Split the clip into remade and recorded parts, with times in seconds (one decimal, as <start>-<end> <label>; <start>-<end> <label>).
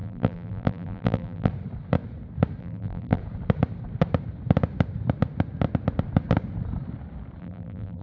0.0-1.5 remade; 1.5-2.6 recorded; 2.6-3.2 remade; 3.2-7.4 recorded; 7.4-8.0 remade